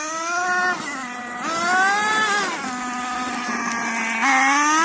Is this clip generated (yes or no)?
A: no